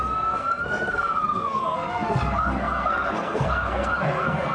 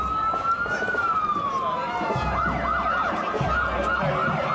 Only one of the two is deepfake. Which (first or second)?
first